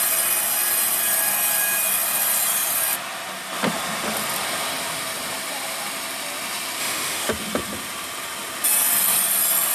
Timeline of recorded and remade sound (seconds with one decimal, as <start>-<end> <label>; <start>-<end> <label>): 0.0-6.8 recorded; 6.8-7.3 remade; 7.3-9.7 recorded